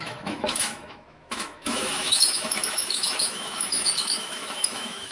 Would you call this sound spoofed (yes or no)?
yes